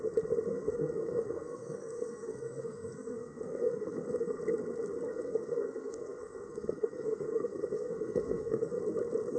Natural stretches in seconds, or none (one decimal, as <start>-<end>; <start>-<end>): 0.0-0.5; 4.4-5.1; 8.8-9.4